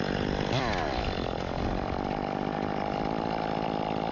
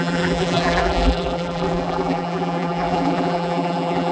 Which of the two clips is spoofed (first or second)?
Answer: second